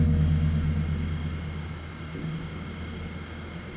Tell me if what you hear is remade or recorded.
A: recorded